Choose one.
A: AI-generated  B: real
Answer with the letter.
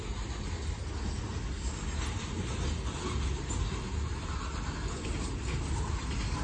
B